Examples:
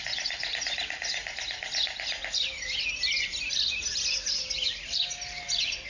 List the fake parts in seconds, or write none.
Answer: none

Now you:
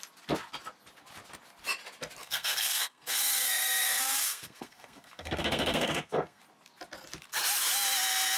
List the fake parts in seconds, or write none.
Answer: 2.2-6.4 (codec, SNAC)

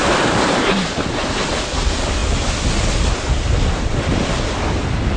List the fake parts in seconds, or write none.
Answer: 0.0-1.5 (vocoder, BigVGAN v2)

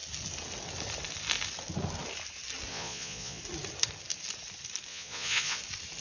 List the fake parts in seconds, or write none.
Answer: 2.7-3.4 (vocoder, Vocos); 4.9-5.6

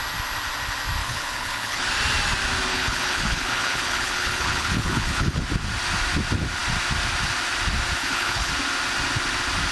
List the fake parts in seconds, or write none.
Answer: 1.0-1.8 (codec, HILCodec); 2.7-5.4; 8.0-8.5

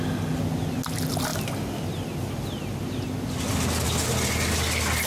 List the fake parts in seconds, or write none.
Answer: 1.3-2.3 (vocoder, BigVGAN v2)